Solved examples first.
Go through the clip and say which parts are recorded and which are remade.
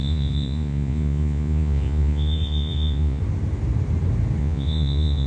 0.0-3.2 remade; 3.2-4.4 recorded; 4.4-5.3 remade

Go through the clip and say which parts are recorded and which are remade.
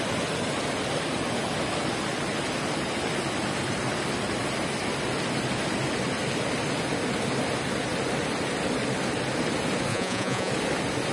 0.0-9.9 recorded; 9.9-10.5 remade; 10.5-11.1 recorded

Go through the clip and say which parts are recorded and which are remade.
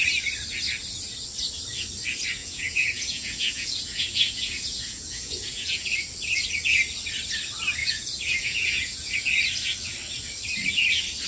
0.0-2.4 recorded; 2.4-5.9 remade; 5.9-7.8 recorded; 7.8-9.1 remade; 9.1-11.3 recorded